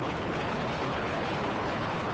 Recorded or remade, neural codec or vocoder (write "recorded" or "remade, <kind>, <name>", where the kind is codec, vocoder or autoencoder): remade, codec, HILCodec